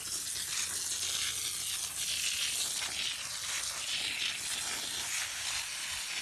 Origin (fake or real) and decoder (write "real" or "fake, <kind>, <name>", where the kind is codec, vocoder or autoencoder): real